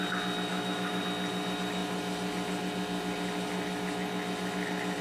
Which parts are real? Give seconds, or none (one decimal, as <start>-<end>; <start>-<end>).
0.0-0.5; 1.0-5.0